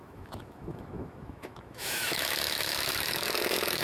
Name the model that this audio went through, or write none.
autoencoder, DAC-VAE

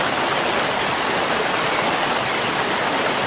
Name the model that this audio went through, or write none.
none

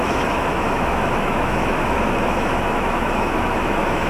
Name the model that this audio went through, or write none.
autoencoder, DAC-VAE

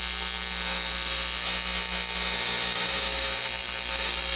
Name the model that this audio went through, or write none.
autoencoder, DAC-VAE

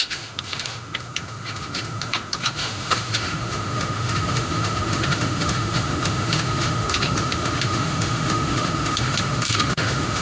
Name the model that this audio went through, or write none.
autoencoder, DAC-VAE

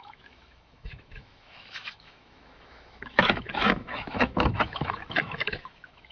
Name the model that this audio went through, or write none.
autoencoder, DAC-VAE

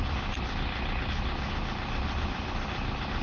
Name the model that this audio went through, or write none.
none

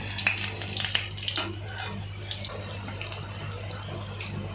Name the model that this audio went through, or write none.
none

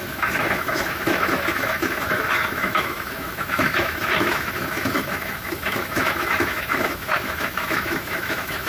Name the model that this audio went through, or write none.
autoencoder, DAC-VAE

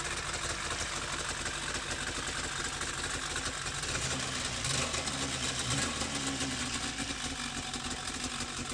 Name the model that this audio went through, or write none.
none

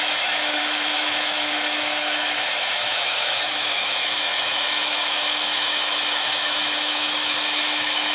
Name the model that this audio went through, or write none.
autoencoder, DAC-VAE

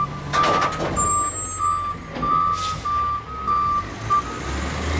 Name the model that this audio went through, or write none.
none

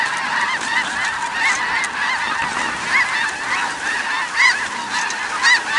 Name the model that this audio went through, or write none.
none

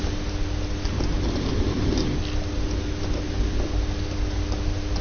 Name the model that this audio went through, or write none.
none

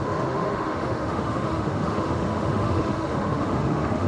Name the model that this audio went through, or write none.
autoencoder, DAC-VAE